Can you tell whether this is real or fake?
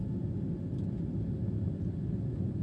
real